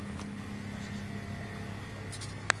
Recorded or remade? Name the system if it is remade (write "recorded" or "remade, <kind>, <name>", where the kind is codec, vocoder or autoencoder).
recorded